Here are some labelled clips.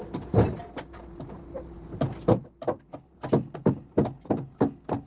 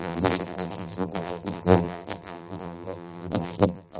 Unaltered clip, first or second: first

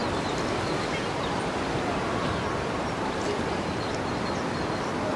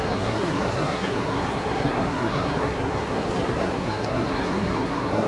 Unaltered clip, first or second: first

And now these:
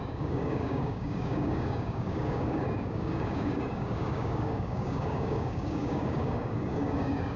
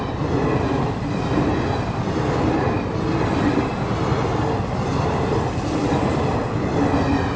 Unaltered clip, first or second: second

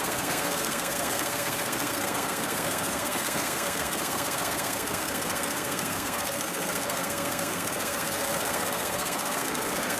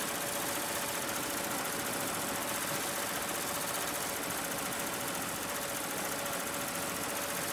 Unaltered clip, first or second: second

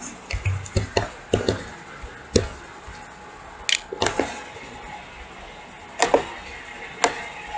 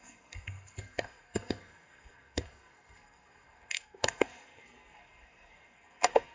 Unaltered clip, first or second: first